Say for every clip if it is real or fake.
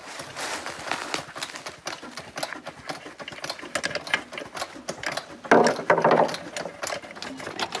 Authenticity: real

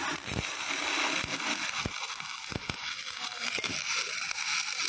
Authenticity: real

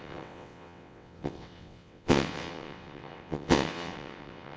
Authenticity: fake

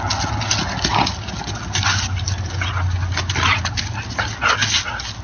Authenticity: real